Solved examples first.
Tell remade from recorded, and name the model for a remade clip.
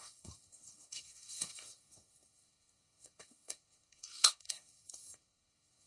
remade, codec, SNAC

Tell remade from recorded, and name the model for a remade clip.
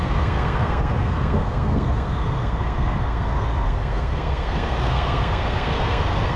remade, codec, SNAC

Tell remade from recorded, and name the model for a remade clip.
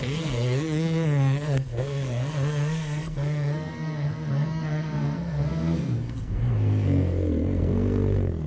remade, codec, SNAC